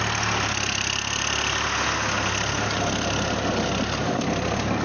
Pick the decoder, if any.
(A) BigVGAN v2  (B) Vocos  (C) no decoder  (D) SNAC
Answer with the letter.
C